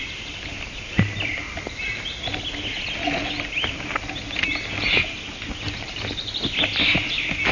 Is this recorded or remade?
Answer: recorded